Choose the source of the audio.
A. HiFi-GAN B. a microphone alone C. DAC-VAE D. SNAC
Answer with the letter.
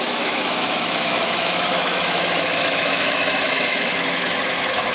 C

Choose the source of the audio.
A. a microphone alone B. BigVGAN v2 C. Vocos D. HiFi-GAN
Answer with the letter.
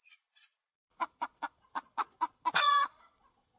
C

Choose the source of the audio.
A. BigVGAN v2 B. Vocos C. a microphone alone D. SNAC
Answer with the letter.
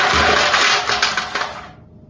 C